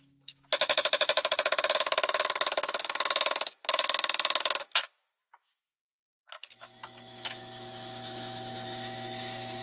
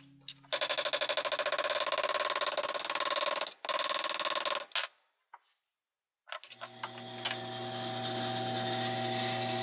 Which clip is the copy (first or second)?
first